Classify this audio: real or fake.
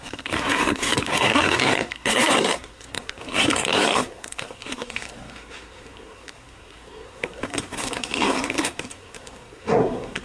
fake